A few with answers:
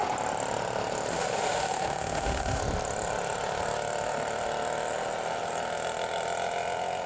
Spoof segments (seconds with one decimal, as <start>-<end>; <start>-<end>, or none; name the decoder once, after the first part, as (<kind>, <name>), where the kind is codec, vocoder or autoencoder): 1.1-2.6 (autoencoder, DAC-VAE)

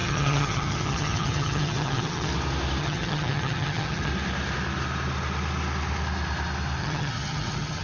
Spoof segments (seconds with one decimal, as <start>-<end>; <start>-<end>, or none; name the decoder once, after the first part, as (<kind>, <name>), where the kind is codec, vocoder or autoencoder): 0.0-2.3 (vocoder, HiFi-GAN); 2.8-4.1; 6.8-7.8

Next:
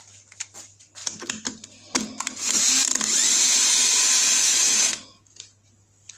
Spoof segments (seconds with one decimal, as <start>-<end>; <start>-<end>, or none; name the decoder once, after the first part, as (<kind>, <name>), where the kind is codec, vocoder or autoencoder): 4.4-5.4 (autoencoder, DAC-VAE)

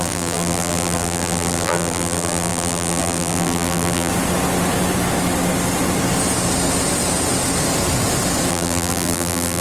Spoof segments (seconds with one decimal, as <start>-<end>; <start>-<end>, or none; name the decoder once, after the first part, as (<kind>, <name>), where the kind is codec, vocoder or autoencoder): 0.0-4.1 (vocoder, BigVGAN v2); 8.5-9.6

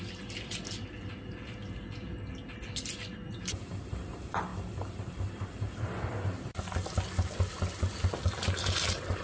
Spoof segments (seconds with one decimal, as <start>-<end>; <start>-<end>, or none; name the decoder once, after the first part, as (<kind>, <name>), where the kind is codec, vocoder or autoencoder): none

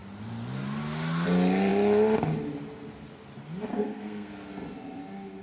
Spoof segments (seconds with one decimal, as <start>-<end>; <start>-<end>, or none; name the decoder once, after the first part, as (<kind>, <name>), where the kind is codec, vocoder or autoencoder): 3.7-4.3 (codec, SNAC)

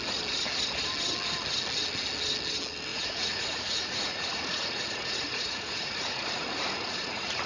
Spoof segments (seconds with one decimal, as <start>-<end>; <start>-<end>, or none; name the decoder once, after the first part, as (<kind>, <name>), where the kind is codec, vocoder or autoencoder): 2.9-7.5 (vocoder, Vocos)